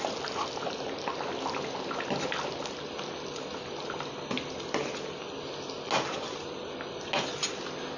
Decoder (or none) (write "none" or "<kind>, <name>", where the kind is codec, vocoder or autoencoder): none